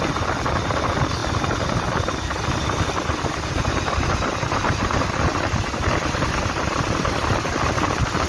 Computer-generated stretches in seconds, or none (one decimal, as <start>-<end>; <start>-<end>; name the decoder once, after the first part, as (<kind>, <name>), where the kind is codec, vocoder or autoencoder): none